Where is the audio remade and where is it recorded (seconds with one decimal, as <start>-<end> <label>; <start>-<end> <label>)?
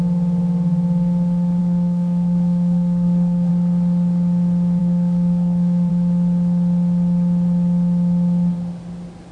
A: 0.0-1.6 recorded; 1.6-3.5 remade; 3.5-4.8 recorded; 4.8-5.9 remade; 5.9-9.3 recorded